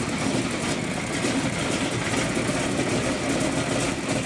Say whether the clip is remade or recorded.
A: recorded